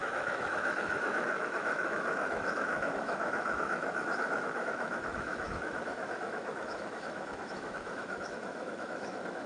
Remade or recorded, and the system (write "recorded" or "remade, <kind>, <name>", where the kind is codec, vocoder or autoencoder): remade, autoencoder, DAC-VAE